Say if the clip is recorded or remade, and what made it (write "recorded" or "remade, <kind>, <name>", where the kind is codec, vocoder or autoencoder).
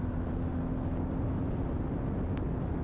recorded